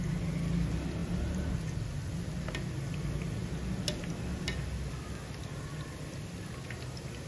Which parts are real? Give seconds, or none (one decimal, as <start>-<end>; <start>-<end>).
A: 0.0-7.3